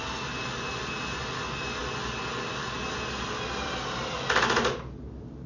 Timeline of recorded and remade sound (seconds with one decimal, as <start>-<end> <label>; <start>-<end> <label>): 0.0-5.5 recorded